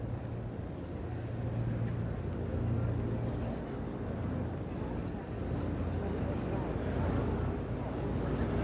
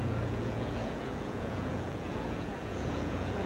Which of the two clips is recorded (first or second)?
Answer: first